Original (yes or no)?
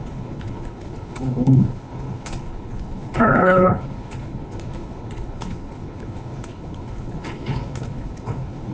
no